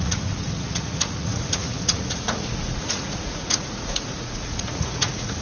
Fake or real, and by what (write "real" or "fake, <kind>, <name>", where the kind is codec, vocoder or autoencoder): fake, vocoder, Vocos